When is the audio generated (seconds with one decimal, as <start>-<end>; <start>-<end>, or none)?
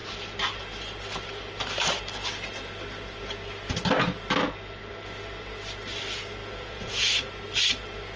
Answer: 6.4-7.3